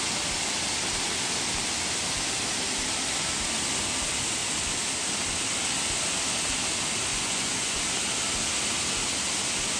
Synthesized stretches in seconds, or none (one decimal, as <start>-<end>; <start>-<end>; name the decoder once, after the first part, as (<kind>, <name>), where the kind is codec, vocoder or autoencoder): 7.1-7.8 (vocoder, Vocos)